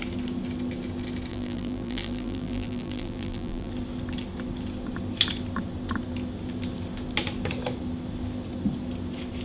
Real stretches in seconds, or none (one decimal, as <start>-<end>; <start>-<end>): 0.0-1.3; 3.7-9.4